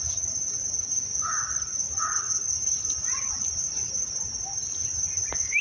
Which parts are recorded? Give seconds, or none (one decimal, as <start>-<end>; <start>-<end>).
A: 0.0-1.1; 2.2-3.0; 3.9-5.6